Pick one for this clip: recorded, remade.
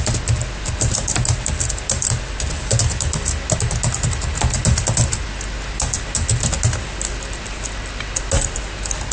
recorded